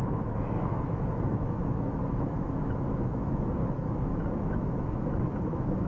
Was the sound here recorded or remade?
remade